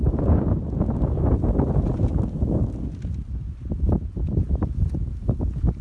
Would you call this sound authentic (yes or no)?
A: yes